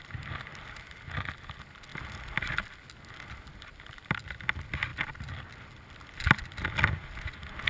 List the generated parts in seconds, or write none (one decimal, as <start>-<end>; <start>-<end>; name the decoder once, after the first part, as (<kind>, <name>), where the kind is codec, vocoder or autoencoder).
none